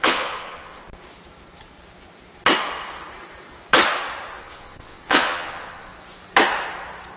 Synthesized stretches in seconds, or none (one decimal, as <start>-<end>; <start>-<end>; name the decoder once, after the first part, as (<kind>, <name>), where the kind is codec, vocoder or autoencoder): 0.0-0.7 (vocoder, Vocos); 4.4-5.9